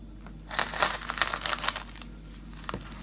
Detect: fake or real real